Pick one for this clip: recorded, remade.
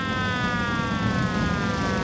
recorded